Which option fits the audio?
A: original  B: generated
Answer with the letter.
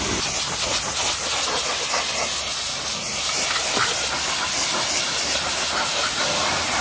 A